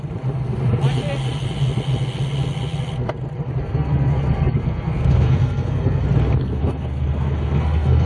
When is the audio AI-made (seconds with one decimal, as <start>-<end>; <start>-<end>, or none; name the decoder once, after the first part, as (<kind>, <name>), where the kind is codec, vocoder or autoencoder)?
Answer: 3.6-6.0 (codec, SNAC); 6.4-8.1